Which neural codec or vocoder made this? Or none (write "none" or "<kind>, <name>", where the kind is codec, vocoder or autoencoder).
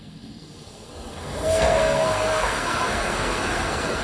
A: codec, SNAC